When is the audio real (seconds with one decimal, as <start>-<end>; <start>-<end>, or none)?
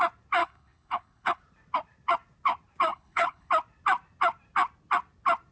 0.0-0.4; 1.4-2.9; 3.5-5.5